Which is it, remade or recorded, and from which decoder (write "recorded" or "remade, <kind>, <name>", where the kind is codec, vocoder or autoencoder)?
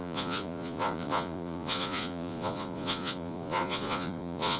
remade, vocoder, Vocos